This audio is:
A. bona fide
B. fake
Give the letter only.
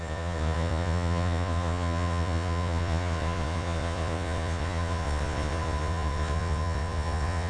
B